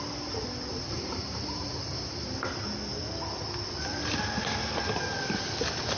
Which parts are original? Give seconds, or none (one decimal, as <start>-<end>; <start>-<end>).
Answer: 0.0-0.7; 2.5-6.0